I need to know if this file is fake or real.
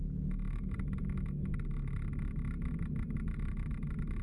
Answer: real